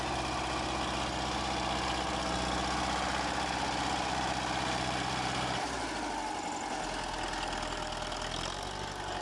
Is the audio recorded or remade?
recorded